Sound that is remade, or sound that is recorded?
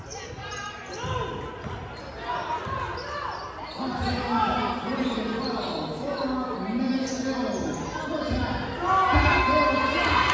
recorded